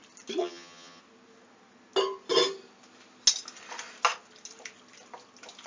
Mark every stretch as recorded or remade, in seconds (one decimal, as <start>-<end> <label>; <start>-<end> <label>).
0.0-0.4 recorded; 0.4-1.0 remade; 1.0-5.7 recorded